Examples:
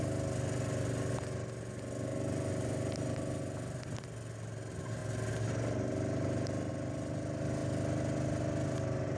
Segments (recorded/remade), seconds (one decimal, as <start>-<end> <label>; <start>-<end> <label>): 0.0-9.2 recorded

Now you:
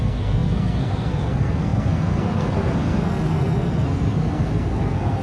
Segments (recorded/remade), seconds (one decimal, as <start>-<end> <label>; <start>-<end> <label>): 0.0-5.2 remade

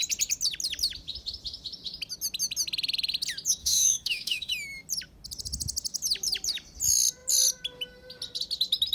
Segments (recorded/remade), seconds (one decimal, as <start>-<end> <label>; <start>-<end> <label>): 0.0-3.6 recorded; 3.6-4.5 remade; 4.5-8.9 recorded